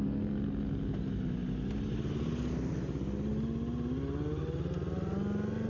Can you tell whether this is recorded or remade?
recorded